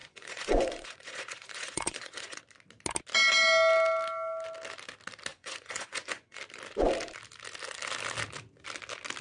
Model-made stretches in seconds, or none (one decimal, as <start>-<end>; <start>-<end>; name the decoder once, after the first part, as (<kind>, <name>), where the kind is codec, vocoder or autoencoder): 0.0-2.4 (vocoder, Vocos); 5.3-6.4